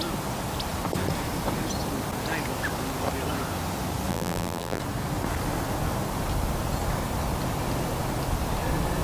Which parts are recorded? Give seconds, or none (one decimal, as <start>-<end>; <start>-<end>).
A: 0.0-4.1; 4.8-9.0